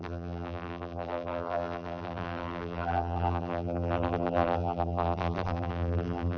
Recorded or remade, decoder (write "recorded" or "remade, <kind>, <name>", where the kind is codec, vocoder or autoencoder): remade, vocoder, BigVGAN v2